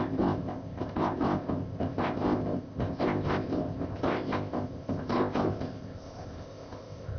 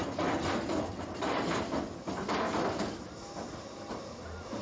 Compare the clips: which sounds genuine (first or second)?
second